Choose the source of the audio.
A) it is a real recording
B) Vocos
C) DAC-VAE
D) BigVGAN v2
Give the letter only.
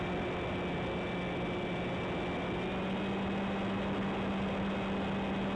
A